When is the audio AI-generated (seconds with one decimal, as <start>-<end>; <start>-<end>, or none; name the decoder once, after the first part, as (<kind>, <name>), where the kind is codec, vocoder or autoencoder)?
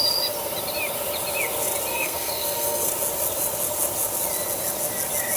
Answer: 1.9-2.9 (codec, SNAC)